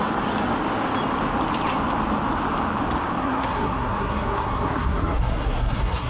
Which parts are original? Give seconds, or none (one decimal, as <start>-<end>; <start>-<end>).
0.0-3.2